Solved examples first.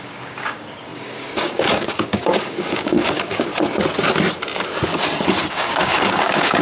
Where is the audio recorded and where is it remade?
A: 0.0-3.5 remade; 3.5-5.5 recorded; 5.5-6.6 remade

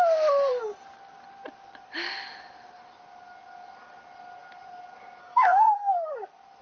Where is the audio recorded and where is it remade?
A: 0.0-5.2 recorded; 5.2-6.1 remade; 6.1-6.6 recorded

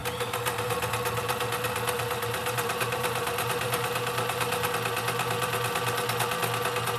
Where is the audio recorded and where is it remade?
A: 0.0-2.4 recorded; 2.4-4.7 remade; 4.7-7.0 recorded